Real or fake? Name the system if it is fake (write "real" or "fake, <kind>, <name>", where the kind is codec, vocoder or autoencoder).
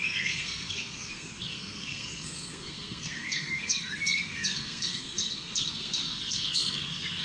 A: fake, codec, SNAC